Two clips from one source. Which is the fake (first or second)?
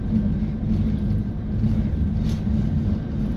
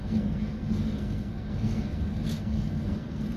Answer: second